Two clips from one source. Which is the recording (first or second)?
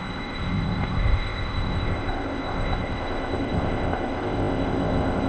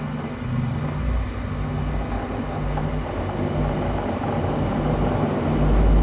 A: second